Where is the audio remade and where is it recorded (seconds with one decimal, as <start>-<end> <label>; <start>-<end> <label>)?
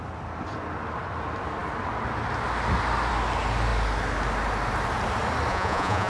0.0-5.5 recorded; 5.5-6.1 remade